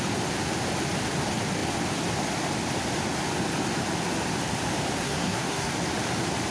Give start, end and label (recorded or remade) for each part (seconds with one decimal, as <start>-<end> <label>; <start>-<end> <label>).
0.0-5.0 recorded; 5.0-5.7 remade; 5.7-6.5 recorded